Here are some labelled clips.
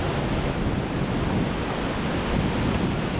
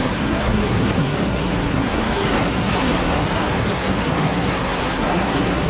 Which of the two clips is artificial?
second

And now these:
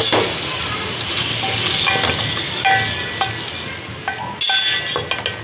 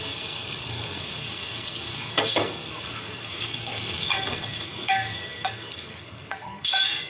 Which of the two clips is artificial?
second